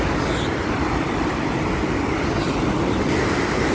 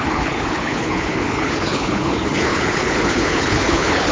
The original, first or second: first